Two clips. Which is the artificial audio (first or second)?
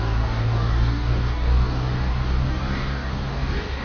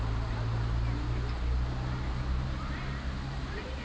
first